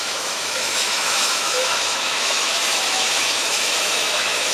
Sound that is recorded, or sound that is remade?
remade